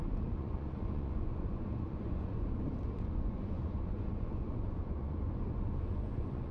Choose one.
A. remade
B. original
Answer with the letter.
A